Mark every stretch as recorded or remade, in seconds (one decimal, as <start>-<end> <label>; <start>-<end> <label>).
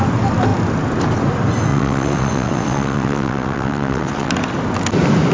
0.0-1.7 recorded; 1.7-4.3 remade; 4.3-5.3 recorded